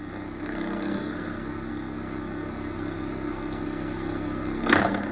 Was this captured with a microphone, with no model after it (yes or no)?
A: no